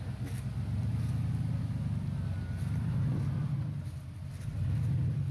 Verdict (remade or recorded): recorded